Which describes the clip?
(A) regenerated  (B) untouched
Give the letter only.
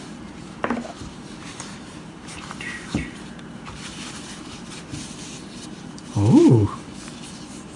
A